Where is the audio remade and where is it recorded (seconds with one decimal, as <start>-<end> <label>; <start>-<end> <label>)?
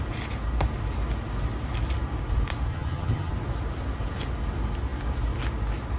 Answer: 0.0-2.7 recorded; 2.7-3.3 remade; 3.3-6.0 recorded